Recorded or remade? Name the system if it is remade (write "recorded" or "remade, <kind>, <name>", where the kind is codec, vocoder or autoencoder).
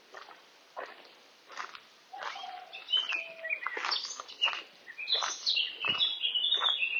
recorded